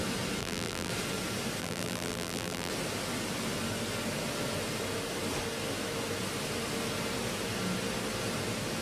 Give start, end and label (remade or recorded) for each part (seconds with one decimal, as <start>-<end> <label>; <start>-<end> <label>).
0.0-0.4 recorded; 0.4-0.9 remade; 0.9-1.6 recorded; 1.6-2.7 remade; 2.7-8.8 recorded